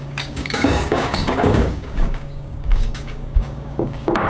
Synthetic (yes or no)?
yes